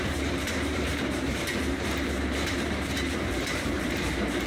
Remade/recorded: remade